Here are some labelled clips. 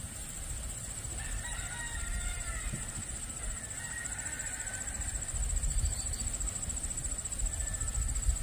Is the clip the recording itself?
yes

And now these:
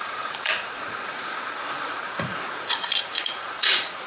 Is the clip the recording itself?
no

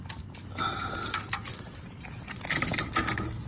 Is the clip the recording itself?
yes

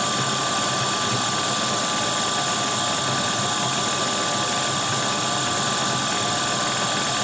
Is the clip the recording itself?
yes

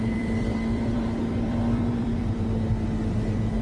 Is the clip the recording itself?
no